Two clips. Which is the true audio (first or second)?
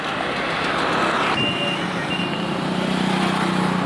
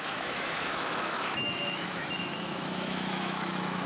first